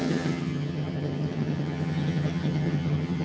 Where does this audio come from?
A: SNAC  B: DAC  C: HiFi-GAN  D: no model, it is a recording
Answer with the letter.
C